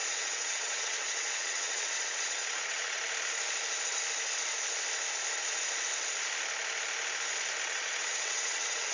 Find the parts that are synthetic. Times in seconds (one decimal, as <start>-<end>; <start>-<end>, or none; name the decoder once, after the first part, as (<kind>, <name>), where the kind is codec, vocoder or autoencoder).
0.0-3.0 (vocoder, WaveNeXt); 7.6-8.9